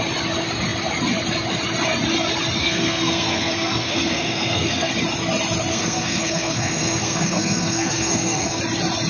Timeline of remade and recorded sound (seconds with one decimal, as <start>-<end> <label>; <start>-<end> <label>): 0.0-2.6 recorded; 2.6-4.9 remade; 4.9-5.7 recorded; 5.7-8.6 remade; 8.6-9.1 recorded